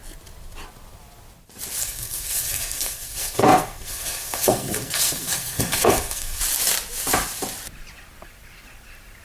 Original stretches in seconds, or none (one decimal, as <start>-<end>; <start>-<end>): 0.0-1.8; 6.4-9.2

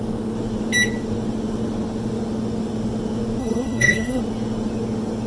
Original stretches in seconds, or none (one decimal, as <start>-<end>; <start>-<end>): 0.0-3.4; 4.2-5.3

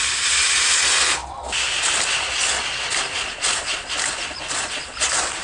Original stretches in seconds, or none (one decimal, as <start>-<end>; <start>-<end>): 0.0-5.4

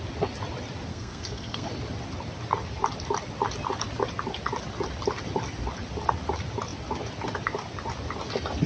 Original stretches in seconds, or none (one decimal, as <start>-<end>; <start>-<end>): 0.0-0.9; 1.7-8.7